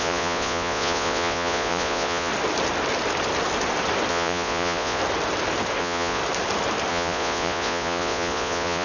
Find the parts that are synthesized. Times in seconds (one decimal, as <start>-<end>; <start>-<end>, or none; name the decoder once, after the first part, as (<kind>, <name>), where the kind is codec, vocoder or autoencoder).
0.0-2.3 (vocoder, Vocos); 4.1-5.0; 5.8-6.2; 6.9-8.8